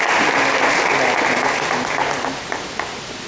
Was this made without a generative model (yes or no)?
yes